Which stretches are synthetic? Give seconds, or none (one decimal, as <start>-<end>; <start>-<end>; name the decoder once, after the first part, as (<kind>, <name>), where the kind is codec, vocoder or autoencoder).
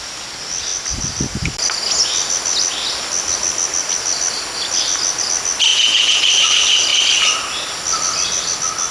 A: 5.7-6.2 (vocoder, Vocos)